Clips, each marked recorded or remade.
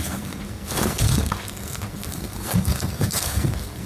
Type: remade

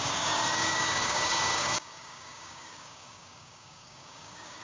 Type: remade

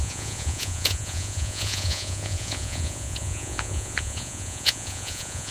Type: remade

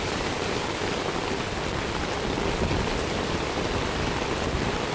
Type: recorded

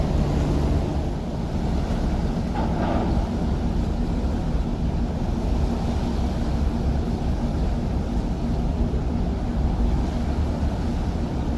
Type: recorded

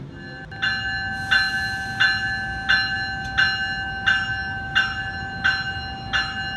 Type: recorded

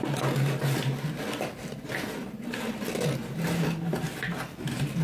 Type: recorded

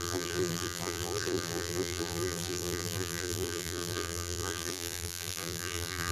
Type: remade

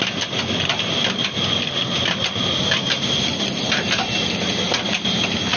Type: recorded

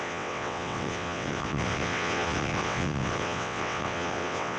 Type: remade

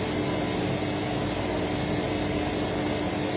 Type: recorded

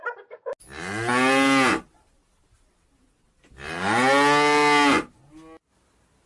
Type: recorded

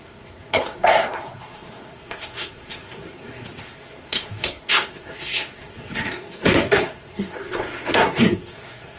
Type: remade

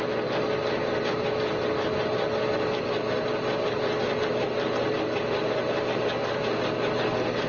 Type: recorded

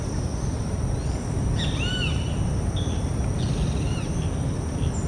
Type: recorded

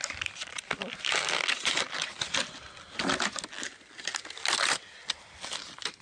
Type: recorded